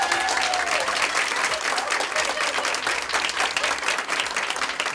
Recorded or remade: recorded